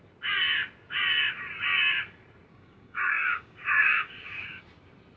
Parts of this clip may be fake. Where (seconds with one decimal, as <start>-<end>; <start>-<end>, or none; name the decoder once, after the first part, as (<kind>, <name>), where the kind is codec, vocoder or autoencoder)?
2.5-4.6 (codec, DAC)